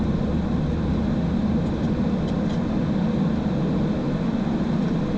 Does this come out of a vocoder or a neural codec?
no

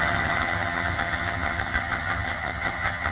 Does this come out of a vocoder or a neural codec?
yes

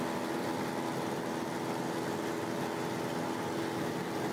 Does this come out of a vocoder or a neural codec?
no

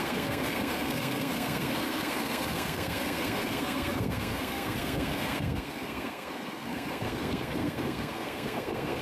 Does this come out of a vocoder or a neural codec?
yes